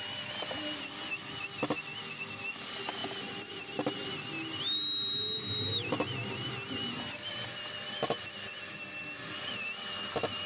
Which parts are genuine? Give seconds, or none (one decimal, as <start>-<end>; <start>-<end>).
0.0-10.5